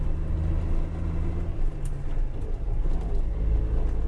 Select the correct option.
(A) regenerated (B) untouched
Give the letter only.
B